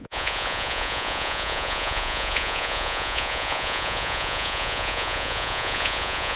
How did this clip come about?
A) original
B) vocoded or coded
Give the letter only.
B